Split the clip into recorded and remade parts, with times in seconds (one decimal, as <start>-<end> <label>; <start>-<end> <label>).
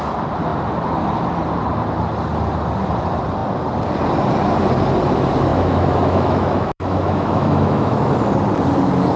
0.0-5.5 recorded; 5.5-8.1 remade; 8.1-9.2 recorded